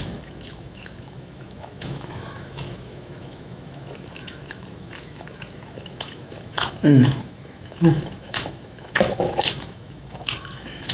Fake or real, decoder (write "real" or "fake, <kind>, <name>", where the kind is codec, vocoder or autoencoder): fake, autoencoder, DAC-VAE